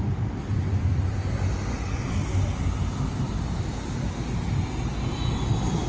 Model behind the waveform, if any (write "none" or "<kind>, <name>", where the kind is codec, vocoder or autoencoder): none